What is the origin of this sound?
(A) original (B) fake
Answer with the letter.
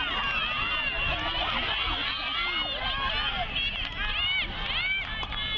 A